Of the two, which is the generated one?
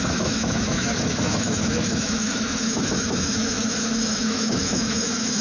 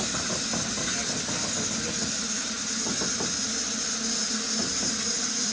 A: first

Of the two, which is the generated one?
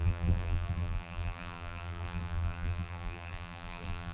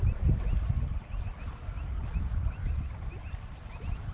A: first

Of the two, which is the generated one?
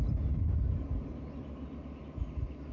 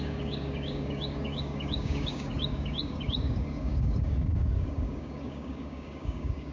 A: second